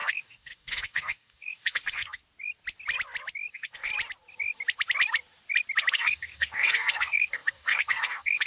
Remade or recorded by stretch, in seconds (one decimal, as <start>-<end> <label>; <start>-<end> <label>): 0.0-2.2 remade; 2.2-3.5 recorded; 3.5-3.9 remade; 3.9-5.9 recorded; 5.9-8.5 remade

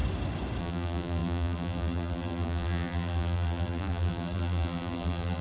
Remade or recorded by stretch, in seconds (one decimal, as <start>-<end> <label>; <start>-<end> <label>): 0.0-0.6 recorded; 0.6-5.4 remade